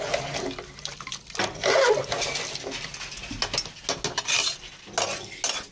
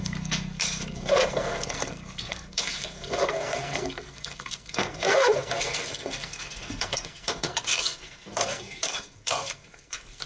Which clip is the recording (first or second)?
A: first